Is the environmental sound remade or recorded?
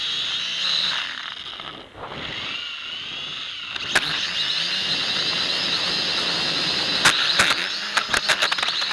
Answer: recorded